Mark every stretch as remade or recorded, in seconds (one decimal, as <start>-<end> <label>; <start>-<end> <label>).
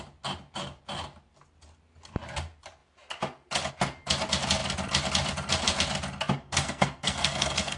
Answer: 0.0-6.4 recorded; 6.4-7.8 remade